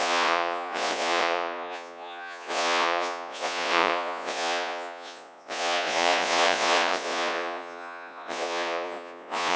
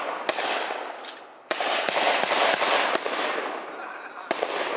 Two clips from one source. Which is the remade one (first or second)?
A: first